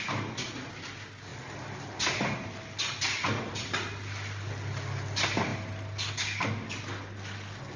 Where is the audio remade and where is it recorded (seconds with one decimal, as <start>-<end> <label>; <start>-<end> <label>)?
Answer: 0.0-7.8 recorded